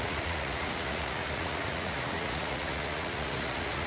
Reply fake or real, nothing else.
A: fake